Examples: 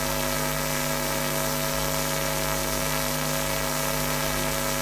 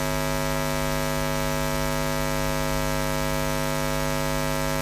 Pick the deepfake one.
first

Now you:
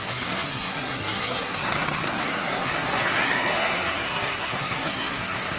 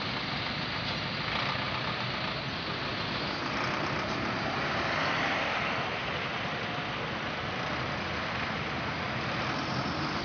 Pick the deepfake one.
first